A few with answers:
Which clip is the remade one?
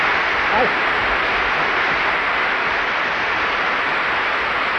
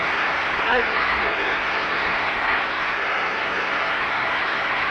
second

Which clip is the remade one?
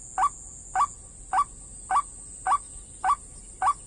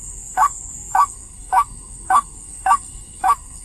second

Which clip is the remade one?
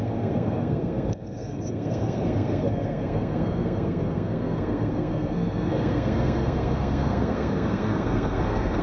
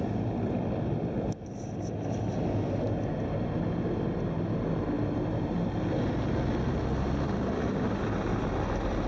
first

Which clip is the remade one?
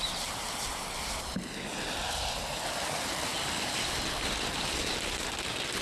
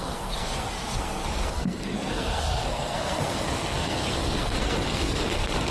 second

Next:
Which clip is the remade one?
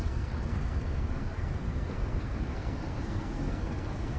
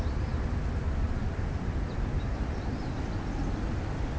first